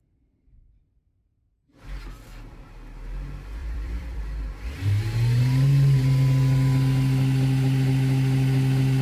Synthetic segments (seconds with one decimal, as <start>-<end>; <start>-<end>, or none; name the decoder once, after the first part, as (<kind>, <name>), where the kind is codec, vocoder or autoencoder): 3.6-4.2 (vocoder, BigVGAN v2)